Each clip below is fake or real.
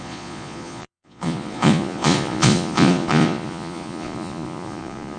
fake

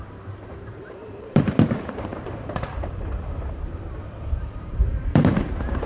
fake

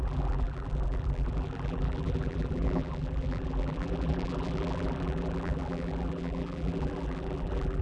fake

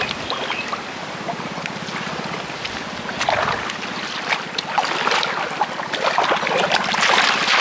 real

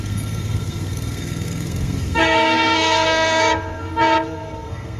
fake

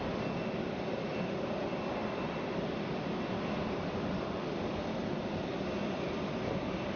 fake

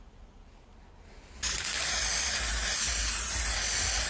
real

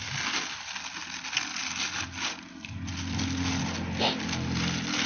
real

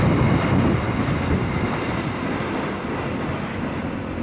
real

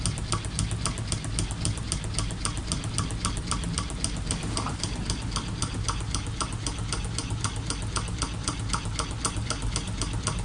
real